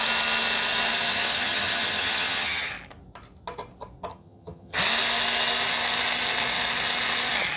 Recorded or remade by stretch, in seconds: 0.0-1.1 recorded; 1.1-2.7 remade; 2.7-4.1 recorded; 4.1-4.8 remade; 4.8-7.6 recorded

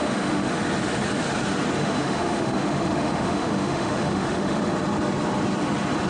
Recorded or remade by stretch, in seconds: 0.0-0.5 remade; 0.5-1.8 recorded; 1.8-4.6 remade; 4.6-6.1 recorded

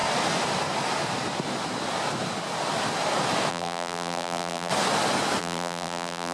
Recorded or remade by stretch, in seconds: 0.0-3.5 recorded; 3.5-4.7 remade; 4.7-5.4 recorded; 5.4-6.3 remade

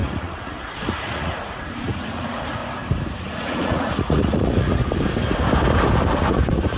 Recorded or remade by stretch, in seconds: 0.0-2.6 remade; 2.6-3.2 recorded; 3.2-4.8 remade; 4.8-6.1 recorded; 6.1-6.8 remade

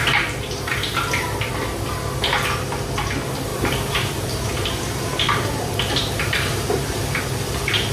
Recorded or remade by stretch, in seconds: 0.0-1.5 remade; 1.5-3.5 recorded; 3.5-7.2 remade; 7.2-7.9 recorded